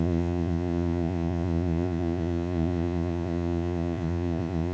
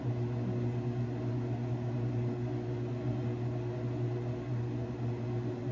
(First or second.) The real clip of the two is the second